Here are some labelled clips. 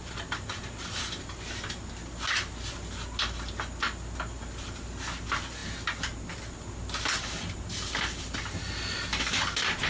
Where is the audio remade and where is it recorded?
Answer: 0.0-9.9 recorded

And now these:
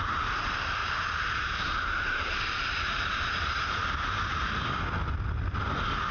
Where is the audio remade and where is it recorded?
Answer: 0.0-0.8 recorded; 0.8-4.5 remade; 4.5-6.1 recorded

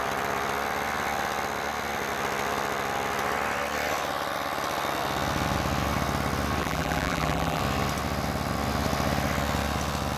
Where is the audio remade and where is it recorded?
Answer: 0.0-6.6 recorded; 6.6-7.6 remade; 7.6-10.2 recorded

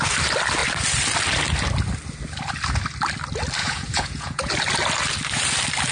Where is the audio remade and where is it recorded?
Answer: 0.0-3.6 recorded; 3.6-4.5 remade; 4.5-5.9 recorded